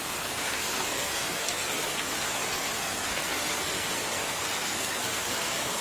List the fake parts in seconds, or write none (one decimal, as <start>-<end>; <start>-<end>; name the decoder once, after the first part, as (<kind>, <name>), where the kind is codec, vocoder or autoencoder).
0.0-5.8 (codec, SNAC)